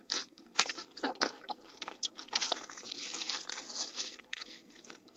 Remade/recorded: remade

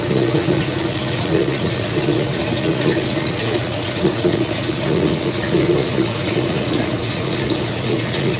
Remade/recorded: remade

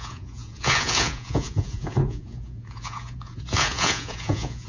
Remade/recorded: remade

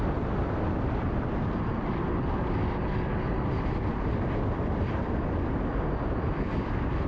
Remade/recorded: recorded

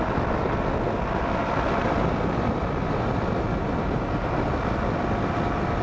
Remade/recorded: recorded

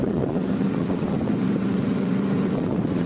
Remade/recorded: remade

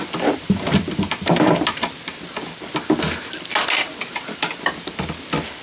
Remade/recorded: recorded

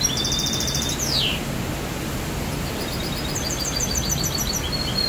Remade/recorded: recorded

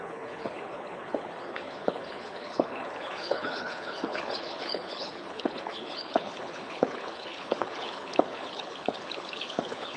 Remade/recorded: remade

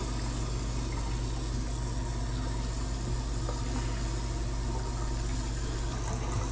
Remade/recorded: recorded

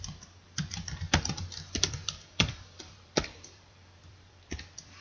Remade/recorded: remade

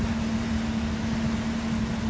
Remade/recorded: recorded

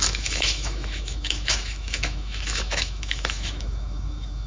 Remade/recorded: remade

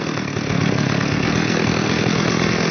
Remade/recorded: remade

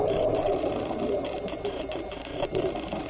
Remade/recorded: remade